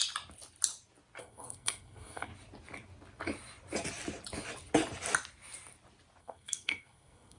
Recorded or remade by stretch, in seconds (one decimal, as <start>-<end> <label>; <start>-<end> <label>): 0.0-1.2 recorded; 1.2-2.3 remade; 2.3-6.2 recorded; 6.2-7.4 remade